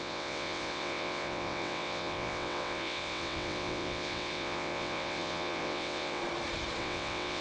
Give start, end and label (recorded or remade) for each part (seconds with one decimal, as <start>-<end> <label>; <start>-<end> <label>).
0.0-6.2 remade; 6.2-6.8 recorded; 6.8-7.4 remade

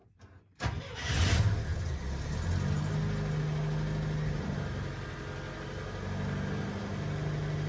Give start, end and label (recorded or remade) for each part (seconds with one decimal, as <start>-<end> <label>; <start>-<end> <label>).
0.0-7.7 recorded